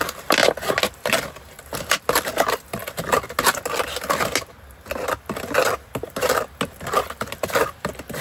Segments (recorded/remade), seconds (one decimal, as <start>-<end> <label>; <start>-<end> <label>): 0.0-8.2 recorded